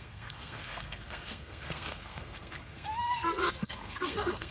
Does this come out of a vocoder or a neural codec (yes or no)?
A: yes